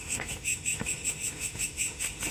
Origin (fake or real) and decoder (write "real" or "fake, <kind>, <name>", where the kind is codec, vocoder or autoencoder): fake, autoencoder, DAC-VAE